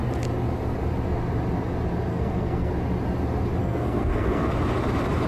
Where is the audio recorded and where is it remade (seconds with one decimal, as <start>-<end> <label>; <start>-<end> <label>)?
0.0-2.1 recorded; 2.1-2.7 remade; 2.7-3.6 recorded; 3.6-4.5 remade; 4.5-5.3 recorded